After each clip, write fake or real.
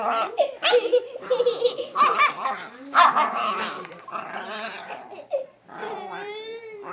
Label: fake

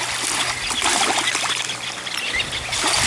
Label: real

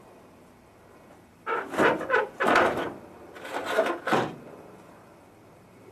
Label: fake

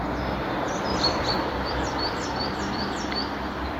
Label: fake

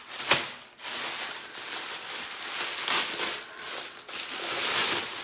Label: real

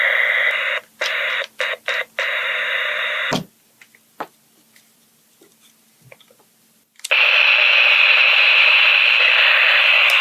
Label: real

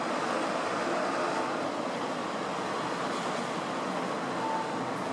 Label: real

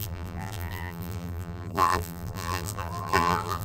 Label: fake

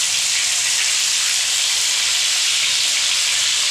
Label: fake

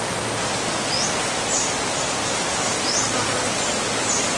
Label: real